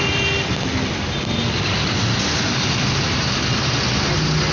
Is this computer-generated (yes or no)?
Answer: no